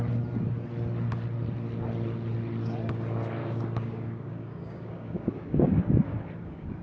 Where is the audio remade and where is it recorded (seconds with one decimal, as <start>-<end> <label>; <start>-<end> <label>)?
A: 0.0-3.4 recorded; 3.4-6.2 remade; 6.2-6.8 recorded